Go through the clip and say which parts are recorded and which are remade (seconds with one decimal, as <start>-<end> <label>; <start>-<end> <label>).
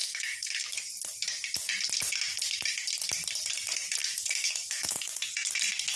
0.0-0.6 remade; 0.6-4.0 recorded; 4.0-5.1 remade; 5.1-6.0 recorded